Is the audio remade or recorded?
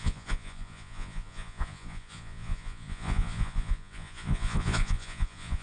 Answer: remade